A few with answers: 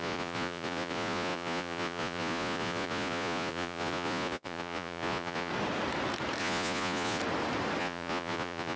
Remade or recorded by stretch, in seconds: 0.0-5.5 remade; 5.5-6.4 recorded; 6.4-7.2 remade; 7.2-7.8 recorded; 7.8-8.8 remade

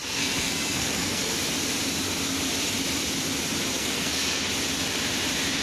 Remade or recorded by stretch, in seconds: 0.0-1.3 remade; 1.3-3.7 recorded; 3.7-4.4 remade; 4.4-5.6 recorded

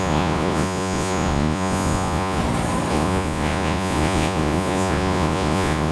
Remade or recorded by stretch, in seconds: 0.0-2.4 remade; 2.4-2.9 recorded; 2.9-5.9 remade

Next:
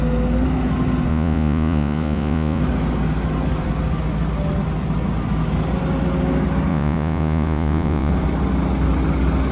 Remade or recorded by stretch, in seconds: 0.0-1.1 recorded; 1.1-2.6 remade; 2.6-6.7 recorded; 6.7-8.1 remade; 8.1-9.5 recorded

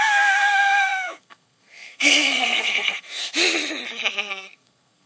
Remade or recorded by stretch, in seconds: 0.0-3.3 remade; 3.3-4.3 recorded; 4.3-5.1 remade

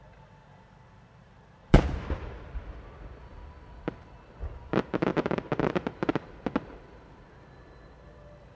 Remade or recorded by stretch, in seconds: 0.0-1.2 recorded; 1.2-2.5 remade; 2.5-5.1 recorded; 5.1-5.7 remade; 5.7-8.6 recorded